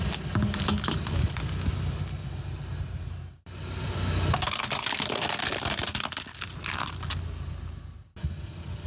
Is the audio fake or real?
real